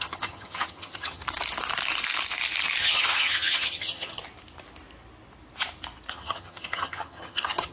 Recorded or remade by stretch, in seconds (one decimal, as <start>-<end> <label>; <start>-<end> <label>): 0.0-1.2 remade; 1.2-2.8 recorded; 2.8-4.2 remade; 4.2-6.1 recorded; 6.1-7.7 remade